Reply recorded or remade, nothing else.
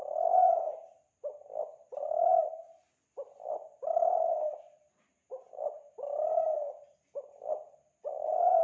recorded